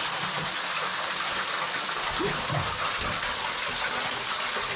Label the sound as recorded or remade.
recorded